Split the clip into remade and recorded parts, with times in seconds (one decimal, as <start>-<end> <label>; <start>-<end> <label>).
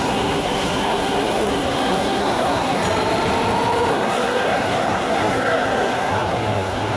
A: 0.0-2.8 remade; 2.8-3.9 recorded; 3.9-7.0 remade